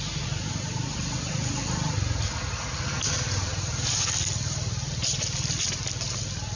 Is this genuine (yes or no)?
yes